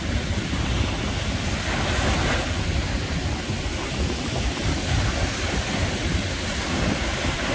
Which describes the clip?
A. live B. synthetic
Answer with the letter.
A